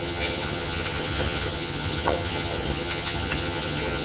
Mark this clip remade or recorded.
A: remade